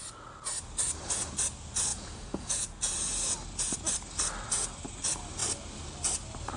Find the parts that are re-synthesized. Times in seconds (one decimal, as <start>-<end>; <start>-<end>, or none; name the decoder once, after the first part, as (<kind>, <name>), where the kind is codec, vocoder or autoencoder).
1.9-2.9 (vocoder, Vocos)